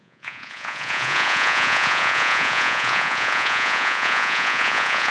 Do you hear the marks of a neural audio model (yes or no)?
yes